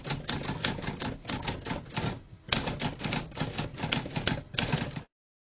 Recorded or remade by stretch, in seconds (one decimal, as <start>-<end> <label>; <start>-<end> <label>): 0.0-5.6 recorded